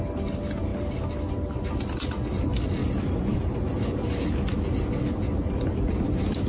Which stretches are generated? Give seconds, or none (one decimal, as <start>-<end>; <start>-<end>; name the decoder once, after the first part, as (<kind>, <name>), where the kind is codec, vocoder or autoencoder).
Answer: 2.8-4.3 (vocoder, BigVGAN v2)